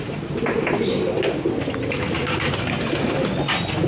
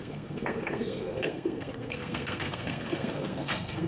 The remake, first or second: second